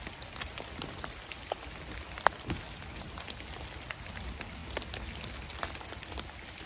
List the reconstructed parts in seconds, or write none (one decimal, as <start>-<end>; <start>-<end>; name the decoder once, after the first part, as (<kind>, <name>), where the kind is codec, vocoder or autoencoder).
none